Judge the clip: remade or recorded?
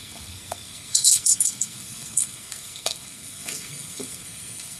remade